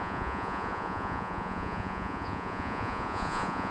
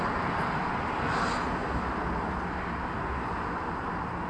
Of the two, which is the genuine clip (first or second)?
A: second